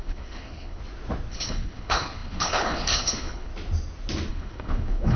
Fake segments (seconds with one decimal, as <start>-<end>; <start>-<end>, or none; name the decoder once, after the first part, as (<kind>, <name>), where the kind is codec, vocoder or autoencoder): 0.0-0.8 (codec, HILCodec); 1.3-3.5; 4.3-5.2

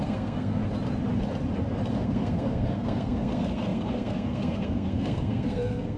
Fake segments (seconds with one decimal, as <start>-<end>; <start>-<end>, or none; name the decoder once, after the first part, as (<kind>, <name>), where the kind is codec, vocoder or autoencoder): 0.0-0.6 (codec, SNAC); 1.9-6.0

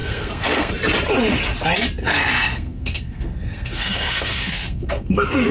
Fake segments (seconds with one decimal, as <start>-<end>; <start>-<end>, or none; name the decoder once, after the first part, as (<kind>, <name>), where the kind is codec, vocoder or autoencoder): 0.0-0.7 (codec, SNAC); 2.0-5.5

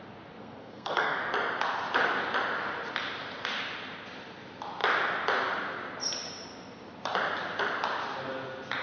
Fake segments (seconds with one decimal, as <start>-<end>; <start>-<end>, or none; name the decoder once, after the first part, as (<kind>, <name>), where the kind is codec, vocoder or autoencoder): 0.4-1.2 (codec, SNAC)